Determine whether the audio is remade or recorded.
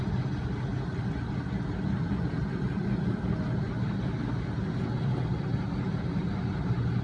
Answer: recorded